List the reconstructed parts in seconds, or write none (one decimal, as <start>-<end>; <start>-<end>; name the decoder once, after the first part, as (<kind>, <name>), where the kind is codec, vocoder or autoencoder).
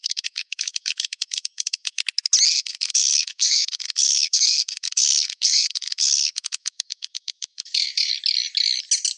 0.0-2.0 (codec, SNAC); 2.5-8.1